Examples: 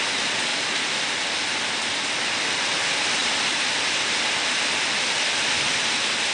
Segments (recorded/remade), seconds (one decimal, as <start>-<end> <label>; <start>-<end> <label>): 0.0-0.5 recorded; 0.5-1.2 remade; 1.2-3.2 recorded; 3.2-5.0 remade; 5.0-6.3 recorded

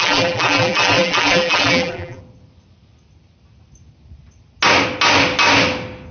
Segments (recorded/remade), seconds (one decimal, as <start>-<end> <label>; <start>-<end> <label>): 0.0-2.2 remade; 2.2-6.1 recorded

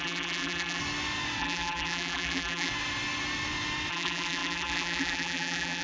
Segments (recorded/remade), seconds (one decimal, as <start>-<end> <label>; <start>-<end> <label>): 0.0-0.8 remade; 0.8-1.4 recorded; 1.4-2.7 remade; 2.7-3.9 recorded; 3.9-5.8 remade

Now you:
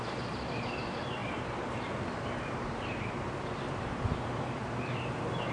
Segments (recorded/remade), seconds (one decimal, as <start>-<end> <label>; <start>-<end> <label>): 0.0-5.5 remade

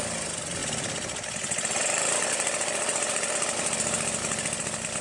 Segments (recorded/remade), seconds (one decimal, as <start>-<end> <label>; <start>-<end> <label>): 0.0-0.6 recorded; 0.6-3.3 remade; 3.3-5.0 recorded

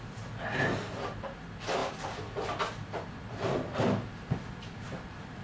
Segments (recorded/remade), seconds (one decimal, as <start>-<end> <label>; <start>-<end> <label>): 0.0-1.8 recorded; 1.8-5.0 remade; 5.0-5.4 recorded